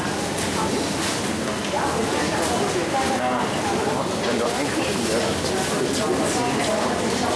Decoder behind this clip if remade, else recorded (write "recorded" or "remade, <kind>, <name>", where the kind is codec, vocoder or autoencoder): recorded